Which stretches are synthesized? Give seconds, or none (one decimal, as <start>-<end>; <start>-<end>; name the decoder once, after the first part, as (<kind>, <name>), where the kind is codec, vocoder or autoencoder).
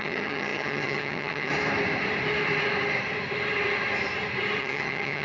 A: 0.0-1.5 (vocoder, HiFi-GAN); 4.6-5.2